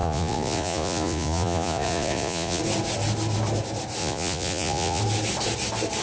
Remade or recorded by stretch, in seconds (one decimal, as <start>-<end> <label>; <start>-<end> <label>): 0.0-2.6 remade; 2.6-4.0 recorded; 4.0-5.0 remade; 5.0-6.0 recorded

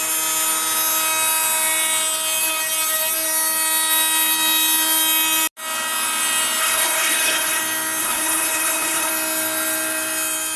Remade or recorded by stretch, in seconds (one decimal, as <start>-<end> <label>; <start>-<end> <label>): 0.0-6.6 recorded; 6.6-7.6 remade; 7.6-8.0 recorded; 8.0-9.1 remade; 9.1-10.6 recorded

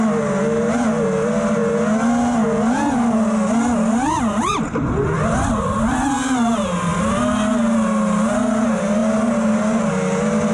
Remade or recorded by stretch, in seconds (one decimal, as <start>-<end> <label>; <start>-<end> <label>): 0.0-10.5 recorded